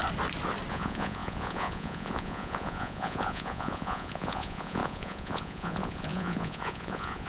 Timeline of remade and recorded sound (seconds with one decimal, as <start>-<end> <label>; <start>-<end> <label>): 0.0-0.7 recorded; 0.7-7.3 remade